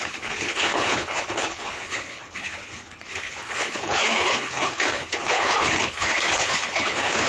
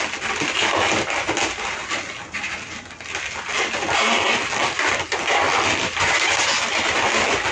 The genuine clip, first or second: second